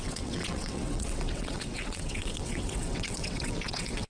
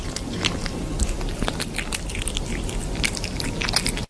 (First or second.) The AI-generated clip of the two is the first